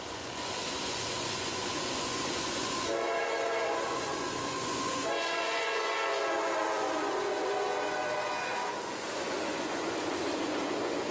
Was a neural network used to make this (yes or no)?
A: yes